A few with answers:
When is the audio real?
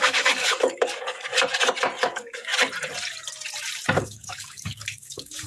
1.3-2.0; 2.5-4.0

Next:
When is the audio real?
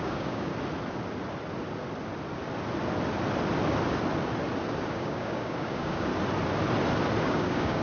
0.5-4.9; 6.1-7.2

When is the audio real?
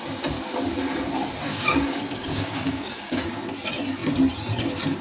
0.0-1.5; 3.3-5.0